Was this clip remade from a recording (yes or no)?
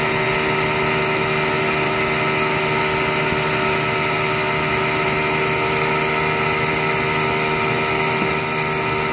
no